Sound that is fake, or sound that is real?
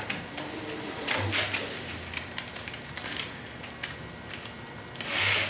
real